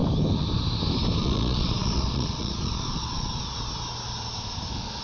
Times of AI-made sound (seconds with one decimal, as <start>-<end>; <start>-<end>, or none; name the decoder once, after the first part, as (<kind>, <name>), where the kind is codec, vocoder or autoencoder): 1.2-3.4 (vocoder, Vocos)